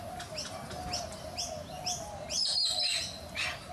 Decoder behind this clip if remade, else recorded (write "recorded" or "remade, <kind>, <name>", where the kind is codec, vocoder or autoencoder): recorded